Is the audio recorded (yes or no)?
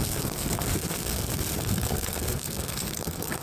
no